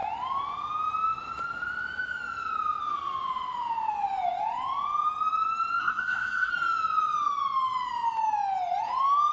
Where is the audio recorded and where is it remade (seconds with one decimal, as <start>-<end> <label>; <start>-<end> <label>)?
0.0-5.8 recorded; 5.8-6.5 remade; 6.5-9.3 recorded